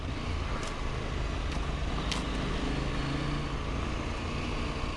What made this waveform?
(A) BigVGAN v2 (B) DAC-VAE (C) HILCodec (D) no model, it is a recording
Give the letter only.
D